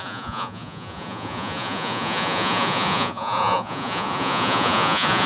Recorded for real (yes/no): no